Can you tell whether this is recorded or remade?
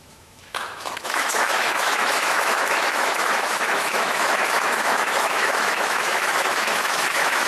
remade